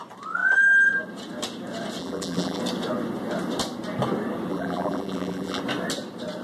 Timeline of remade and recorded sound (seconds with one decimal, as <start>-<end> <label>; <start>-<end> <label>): 0.0-2.0 recorded; 2.0-2.6 remade; 2.6-4.5 recorded; 4.5-5.6 remade; 5.6-6.4 recorded